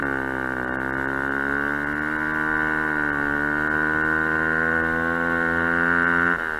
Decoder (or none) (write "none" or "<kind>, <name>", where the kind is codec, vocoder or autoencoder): none